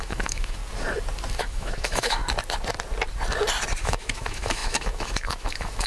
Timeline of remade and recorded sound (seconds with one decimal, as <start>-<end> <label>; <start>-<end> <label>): 0.0-0.6 remade; 0.6-1.4 recorded; 1.4-2.2 remade; 2.2-3.8 recorded; 3.8-5.9 remade